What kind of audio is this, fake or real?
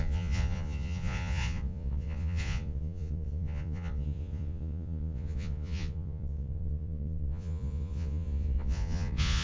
fake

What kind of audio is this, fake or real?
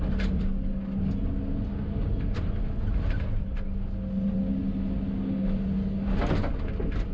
real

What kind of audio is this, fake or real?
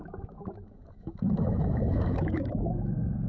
fake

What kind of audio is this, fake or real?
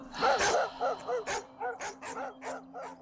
real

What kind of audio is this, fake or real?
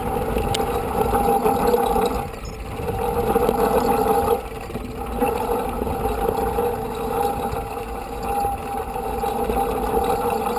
real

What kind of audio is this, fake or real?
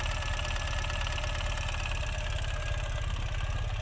real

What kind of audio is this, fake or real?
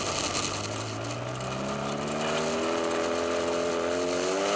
real